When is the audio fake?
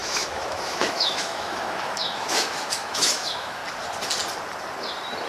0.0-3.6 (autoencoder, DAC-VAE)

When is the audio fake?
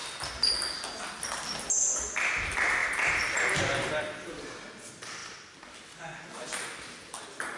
2.8-3.9 (vocoder, BigVGAN v2)